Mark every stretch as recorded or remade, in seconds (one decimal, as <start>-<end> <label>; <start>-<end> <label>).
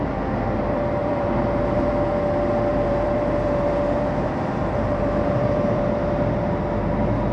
0.0-1.0 recorded; 1.0-1.9 remade; 1.9-2.7 recorded; 2.7-5.8 remade; 5.8-7.3 recorded